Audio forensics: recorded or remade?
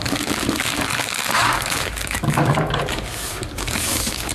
remade